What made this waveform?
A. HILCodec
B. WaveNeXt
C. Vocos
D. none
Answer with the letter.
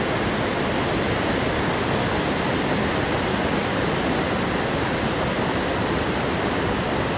D